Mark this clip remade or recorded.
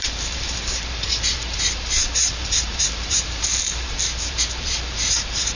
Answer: remade